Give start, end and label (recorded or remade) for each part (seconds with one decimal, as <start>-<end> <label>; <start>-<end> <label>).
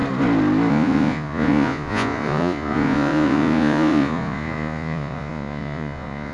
0.0-0.7 recorded; 0.7-6.3 remade